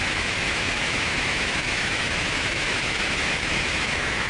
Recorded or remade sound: remade